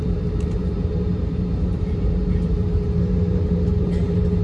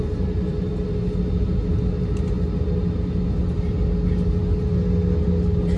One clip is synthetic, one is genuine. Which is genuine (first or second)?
second